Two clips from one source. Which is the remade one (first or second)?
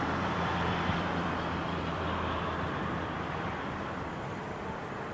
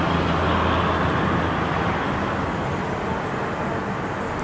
first